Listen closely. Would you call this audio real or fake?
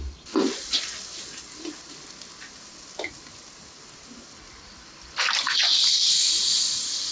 real